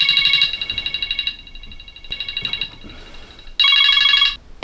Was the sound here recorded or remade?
recorded